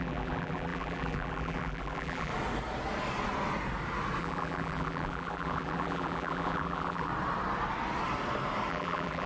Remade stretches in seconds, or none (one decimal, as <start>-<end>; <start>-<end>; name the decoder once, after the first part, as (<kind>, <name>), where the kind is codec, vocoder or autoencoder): 0.0-2.3 (vocoder, BigVGAN v2); 4.2-7.1; 8.7-9.3